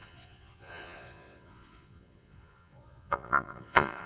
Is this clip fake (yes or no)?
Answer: yes